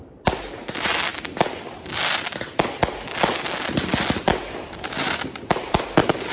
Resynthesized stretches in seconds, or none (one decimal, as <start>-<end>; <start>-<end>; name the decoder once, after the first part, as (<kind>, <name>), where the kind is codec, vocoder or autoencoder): none